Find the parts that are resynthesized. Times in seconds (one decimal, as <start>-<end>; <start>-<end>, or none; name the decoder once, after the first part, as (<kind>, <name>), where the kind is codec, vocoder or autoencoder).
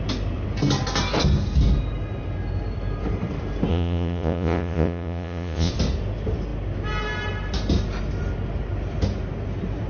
3.7-5.7 (vocoder, Vocos)